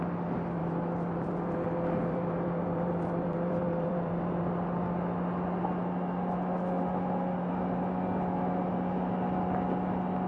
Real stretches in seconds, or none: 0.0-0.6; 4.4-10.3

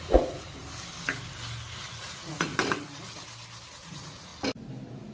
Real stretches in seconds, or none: 0.6-2.0; 2.5-3.7; 4.3-5.1

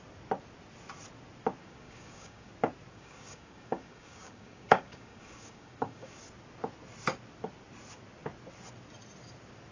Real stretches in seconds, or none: 0.0-1.6; 2.5-2.9; 6.2-9.7

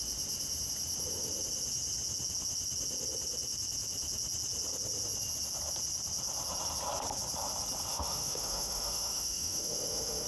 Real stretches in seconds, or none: 0.0-7.9

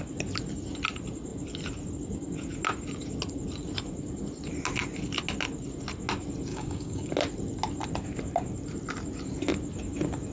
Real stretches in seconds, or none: 0.0-6.5; 7.1-10.3

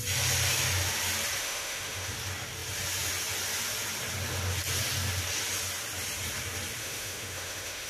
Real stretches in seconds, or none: 0.0-1.4; 2.1-6.8